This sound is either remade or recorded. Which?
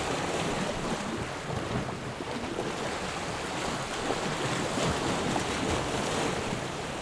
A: recorded